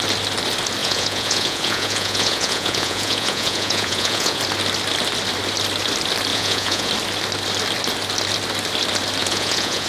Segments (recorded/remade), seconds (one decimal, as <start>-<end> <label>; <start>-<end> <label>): 0.0-0.8 recorded; 0.8-4.4 remade; 4.4-6.3 recorded; 6.3-6.9 remade; 6.9-9.2 recorded; 9.2-9.9 remade

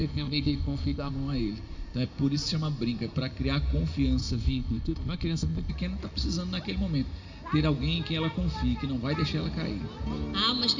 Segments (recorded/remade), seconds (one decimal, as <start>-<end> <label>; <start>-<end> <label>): 0.0-1.1 remade; 1.1-4.2 recorded; 4.2-5.7 remade; 5.7-10.8 recorded

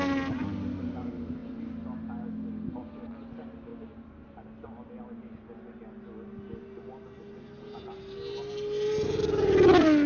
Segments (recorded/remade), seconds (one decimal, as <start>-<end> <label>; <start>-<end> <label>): 0.0-10.1 recorded

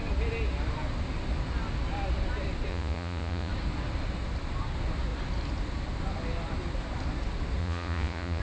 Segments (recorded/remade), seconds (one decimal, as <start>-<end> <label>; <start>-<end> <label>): 0.0-2.7 recorded; 2.7-3.5 remade; 3.5-7.6 recorded; 7.6-8.4 remade